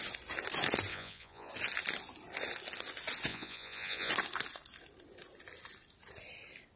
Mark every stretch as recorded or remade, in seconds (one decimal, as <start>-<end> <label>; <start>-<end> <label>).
0.0-0.9 recorded; 0.9-1.5 remade; 1.5-3.3 recorded; 3.3-4.1 remade; 4.1-6.8 recorded